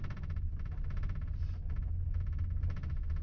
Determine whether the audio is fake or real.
real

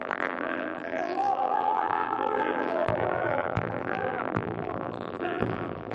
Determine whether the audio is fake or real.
fake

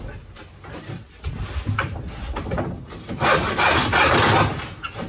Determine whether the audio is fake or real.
real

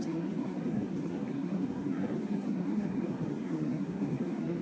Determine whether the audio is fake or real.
fake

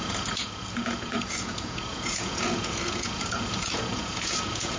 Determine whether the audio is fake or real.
fake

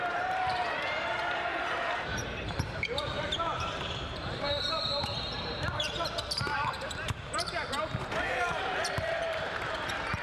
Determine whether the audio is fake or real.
fake